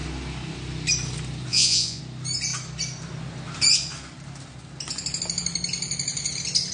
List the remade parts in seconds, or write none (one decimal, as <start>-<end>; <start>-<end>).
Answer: 1.5-2.0

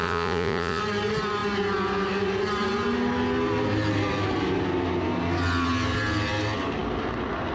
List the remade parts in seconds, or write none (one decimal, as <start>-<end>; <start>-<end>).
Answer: 0.0-0.8

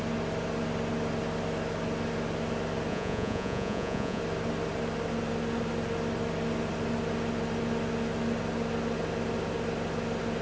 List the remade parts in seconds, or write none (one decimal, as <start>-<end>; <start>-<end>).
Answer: 2.9-4.2

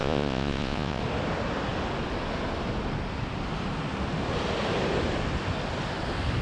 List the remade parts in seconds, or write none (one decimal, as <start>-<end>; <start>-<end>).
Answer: 0.0-1.0

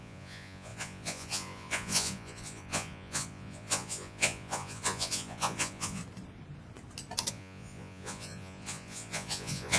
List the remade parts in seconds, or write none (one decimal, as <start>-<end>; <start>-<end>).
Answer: 0.0-6.0; 7.3-9.8

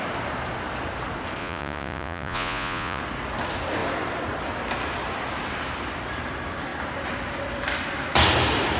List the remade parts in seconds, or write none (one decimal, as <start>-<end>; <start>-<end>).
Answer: 1.4-3.0

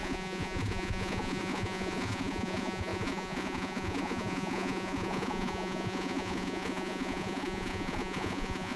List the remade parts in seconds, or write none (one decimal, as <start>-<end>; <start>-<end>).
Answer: 0.0-8.8

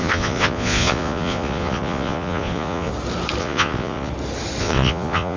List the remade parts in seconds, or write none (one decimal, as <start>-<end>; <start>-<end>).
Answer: 0.0-2.9; 3.4-4.1; 4.6-5.4